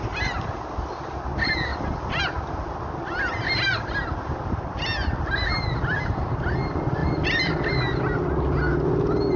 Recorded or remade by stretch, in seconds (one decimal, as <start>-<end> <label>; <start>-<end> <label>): 0.0-1.7 recorded; 1.7-2.2 remade; 2.2-7.0 recorded; 7.0-7.5 remade; 7.5-9.4 recorded